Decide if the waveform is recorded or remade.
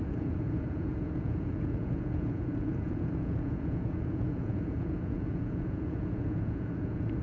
remade